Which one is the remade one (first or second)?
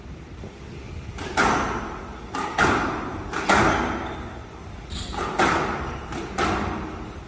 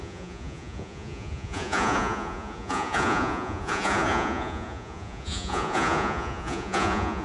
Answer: second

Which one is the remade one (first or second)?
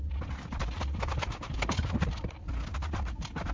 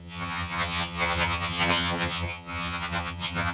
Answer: second